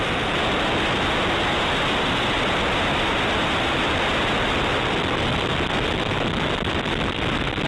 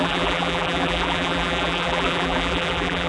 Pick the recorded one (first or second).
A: first